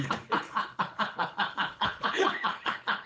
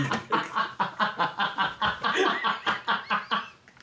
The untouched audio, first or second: second